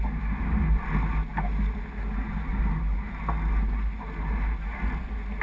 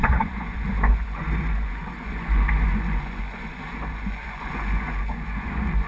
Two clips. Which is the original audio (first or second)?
first